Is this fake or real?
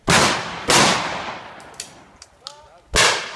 real